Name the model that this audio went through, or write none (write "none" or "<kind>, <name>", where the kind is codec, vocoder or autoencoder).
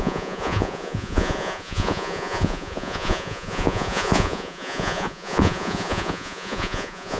vocoder, Vocos